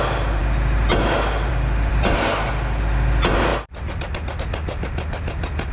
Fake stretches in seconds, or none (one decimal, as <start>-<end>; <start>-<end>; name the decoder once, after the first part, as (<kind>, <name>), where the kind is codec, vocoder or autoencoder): 1.9-2.5 (vocoder, BigVGAN v2)